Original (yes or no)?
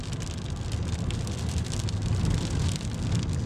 no